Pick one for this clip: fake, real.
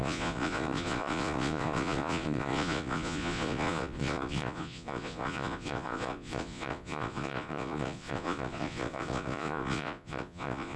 fake